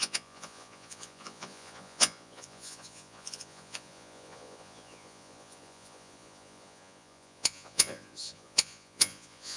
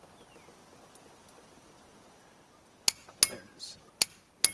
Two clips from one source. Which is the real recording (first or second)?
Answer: second